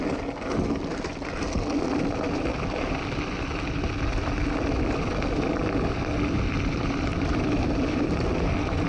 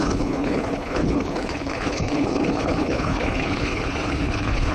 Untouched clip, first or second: first